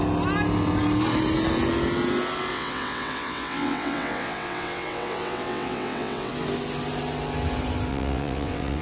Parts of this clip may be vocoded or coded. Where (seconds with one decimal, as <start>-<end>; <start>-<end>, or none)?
2.5-6.3; 7.9-8.8